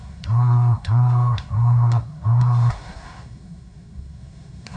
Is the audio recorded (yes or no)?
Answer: no